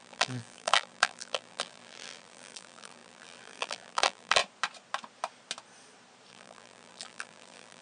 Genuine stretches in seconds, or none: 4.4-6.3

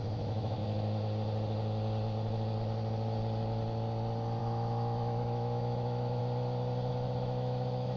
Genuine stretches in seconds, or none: 0.6-4.4; 6.2-6.9